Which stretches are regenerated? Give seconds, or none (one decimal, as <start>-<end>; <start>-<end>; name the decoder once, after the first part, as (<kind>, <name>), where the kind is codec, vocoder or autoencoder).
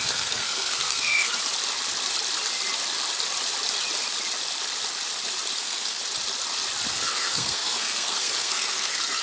0.0-1.3 (codec, SNAC); 5.6-6.0; 6.9-9.2